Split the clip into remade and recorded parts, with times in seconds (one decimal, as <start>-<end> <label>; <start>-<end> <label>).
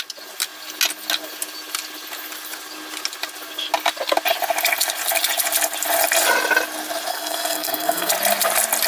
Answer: 0.0-7.1 recorded; 7.1-8.1 remade; 8.1-8.9 recorded